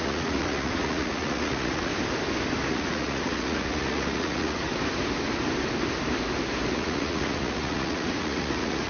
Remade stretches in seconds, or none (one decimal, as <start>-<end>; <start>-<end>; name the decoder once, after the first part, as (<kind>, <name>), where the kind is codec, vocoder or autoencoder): 0.0-1.9 (vocoder, Vocos); 2.7-4.7; 6.7-8.9